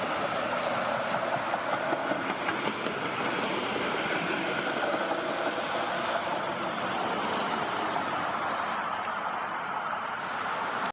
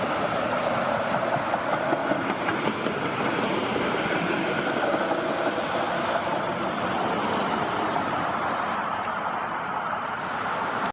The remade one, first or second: second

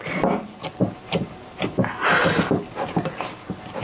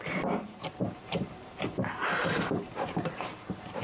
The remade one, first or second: second